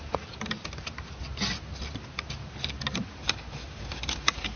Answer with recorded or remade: recorded